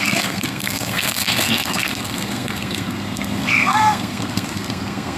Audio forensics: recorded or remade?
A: remade